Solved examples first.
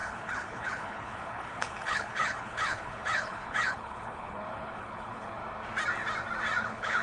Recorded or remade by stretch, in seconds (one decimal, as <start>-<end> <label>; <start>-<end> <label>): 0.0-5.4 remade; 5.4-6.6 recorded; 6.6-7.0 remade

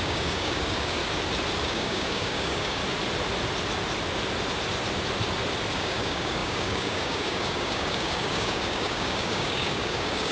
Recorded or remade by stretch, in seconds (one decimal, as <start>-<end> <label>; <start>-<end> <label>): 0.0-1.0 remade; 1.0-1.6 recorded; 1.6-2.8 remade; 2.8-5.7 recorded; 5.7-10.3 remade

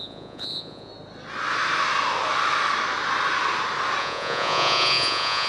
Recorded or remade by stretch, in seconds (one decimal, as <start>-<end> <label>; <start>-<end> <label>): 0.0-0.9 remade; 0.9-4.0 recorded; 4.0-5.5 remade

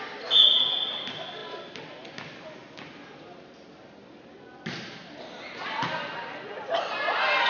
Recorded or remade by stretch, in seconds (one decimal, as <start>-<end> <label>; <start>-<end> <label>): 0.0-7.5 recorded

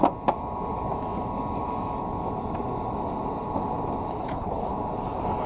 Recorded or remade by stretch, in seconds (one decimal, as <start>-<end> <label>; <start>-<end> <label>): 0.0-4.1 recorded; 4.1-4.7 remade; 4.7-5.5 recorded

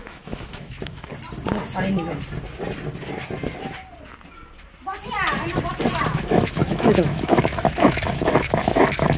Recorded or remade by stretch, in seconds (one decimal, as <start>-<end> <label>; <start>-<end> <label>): 0.0-1.1 remade; 1.1-6.1 recorded; 6.1-9.2 remade

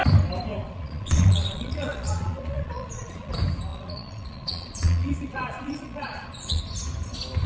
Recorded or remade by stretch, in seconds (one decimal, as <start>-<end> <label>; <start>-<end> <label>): 0.0-0.6 recorded; 0.6-3.3 remade; 3.3-3.7 recorded; 3.7-6.6 remade; 6.6-7.5 recorded